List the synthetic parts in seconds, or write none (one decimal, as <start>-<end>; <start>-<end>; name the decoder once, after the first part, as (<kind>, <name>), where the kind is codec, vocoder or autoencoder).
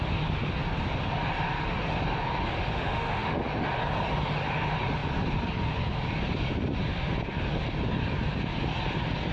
2.6-3.4 (autoencoder, DAC-VAE)